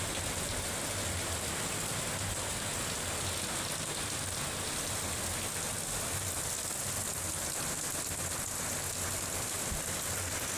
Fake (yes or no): no